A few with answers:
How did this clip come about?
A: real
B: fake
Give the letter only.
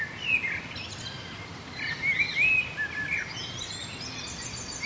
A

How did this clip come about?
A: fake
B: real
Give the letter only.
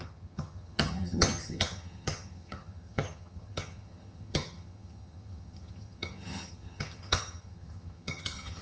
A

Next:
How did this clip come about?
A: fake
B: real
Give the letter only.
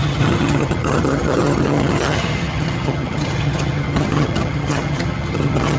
A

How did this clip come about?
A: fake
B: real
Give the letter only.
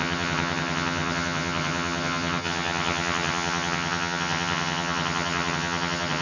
A